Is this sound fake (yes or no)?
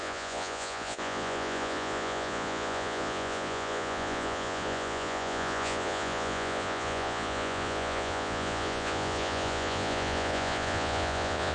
yes